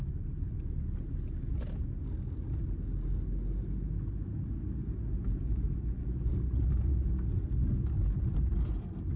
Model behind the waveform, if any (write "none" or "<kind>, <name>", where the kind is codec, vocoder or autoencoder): none